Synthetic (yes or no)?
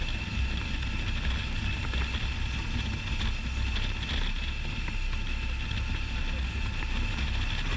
no